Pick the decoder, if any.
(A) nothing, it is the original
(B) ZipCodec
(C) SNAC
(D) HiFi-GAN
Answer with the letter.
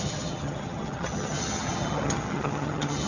D